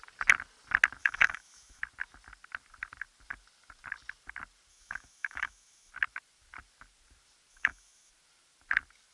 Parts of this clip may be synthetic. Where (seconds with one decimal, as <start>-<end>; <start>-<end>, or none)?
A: 1.0-1.8; 4.7-5.9; 7.5-8.1

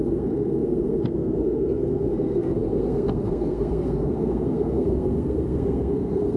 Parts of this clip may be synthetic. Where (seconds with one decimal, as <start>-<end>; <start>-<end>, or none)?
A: 0.0-6.4

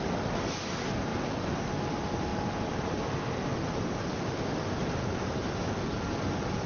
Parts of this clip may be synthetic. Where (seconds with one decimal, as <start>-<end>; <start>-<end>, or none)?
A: 1.1-1.7; 2.3-5.8

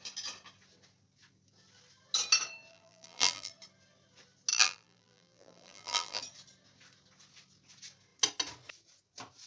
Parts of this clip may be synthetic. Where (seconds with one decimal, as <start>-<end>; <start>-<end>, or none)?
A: 2.7-3.5; 4.5-6.2

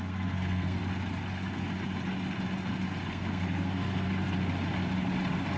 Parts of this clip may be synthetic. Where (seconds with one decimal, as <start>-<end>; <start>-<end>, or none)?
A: 0.0-0.8; 3.1-4.1

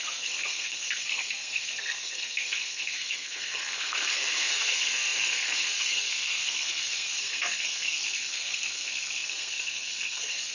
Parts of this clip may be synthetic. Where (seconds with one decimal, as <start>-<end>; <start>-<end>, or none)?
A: 0.0-10.5